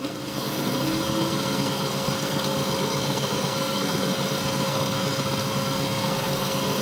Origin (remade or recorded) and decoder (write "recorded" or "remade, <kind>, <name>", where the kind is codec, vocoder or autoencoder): remade, codec, SNAC